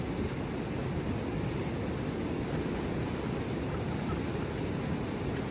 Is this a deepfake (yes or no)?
no